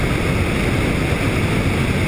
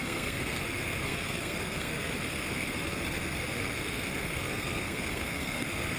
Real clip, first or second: first